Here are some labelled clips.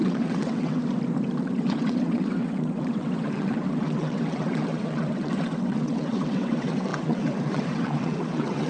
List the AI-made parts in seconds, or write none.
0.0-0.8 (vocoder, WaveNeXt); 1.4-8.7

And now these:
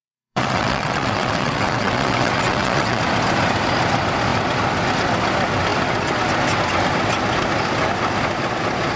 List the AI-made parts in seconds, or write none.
0.0-3.0 (vocoder, WaveNeXt)

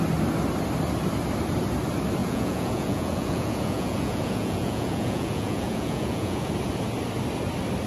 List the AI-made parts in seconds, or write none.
2.2-6.5 (vocoder, Vocos)

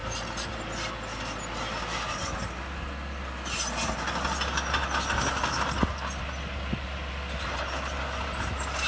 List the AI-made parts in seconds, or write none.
none